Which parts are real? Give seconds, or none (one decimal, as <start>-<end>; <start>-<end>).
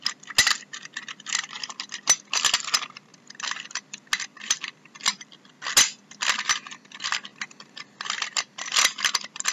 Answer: 0.0-9.5